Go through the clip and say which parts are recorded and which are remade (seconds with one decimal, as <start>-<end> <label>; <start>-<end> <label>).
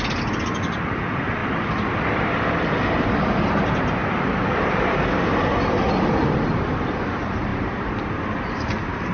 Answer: 0.0-9.1 recorded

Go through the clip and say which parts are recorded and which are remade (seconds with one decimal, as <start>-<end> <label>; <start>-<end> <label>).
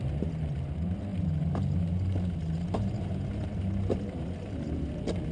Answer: 0.0-5.3 recorded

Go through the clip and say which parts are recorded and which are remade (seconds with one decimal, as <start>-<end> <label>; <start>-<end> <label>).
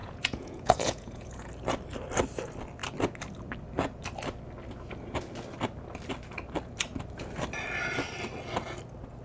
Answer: 0.0-1.5 remade; 1.5-9.2 recorded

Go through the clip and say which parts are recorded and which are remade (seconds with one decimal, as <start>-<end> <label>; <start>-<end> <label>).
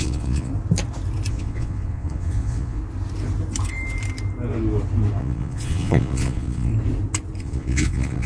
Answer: 0.0-0.5 remade; 0.5-1.3 recorded; 1.3-2.8 remade; 2.8-5.2 recorded; 5.2-6.7 remade; 6.7-7.4 recorded; 7.4-8.3 remade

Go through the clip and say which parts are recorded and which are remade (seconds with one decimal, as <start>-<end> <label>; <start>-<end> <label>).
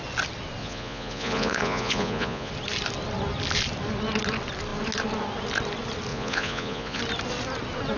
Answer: 0.0-0.6 recorded; 0.6-2.5 remade; 2.5-6.1 recorded; 6.1-7.0 remade; 7.0-8.0 recorded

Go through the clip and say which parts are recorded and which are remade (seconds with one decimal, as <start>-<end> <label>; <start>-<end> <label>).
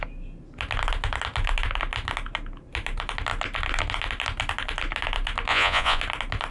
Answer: 0.0-5.5 recorded; 5.5-6.0 remade; 6.0-6.5 recorded